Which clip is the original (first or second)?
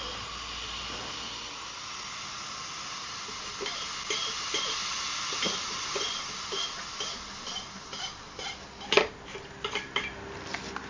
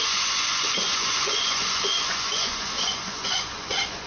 first